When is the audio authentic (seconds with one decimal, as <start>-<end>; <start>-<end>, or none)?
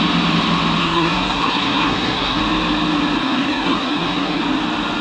0.0-0.8; 2.4-3.2; 4.4-5.0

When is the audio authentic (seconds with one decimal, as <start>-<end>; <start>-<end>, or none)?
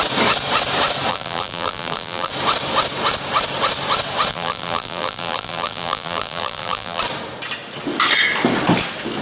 0.0-1.1; 2.3-4.3; 7.0-9.2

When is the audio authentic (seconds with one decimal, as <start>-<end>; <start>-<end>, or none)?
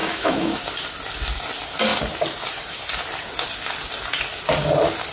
0.6-5.1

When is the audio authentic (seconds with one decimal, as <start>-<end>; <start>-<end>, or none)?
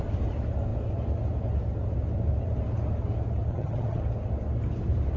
0.0-3.5; 4.0-5.2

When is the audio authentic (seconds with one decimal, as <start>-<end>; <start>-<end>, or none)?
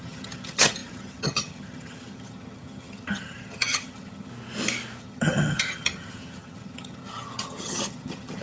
4.3-5.0